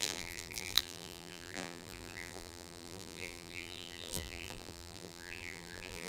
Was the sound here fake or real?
fake